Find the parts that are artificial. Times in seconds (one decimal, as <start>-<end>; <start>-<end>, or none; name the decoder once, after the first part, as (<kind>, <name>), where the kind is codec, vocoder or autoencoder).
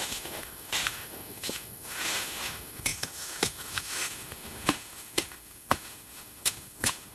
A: 0.0-7.1 (autoencoder, DAC-VAE)